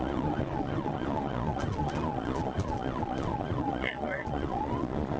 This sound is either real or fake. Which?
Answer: fake